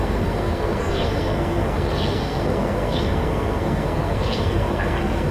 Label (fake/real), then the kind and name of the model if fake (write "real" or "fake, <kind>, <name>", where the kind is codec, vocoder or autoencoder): fake, codec, SNAC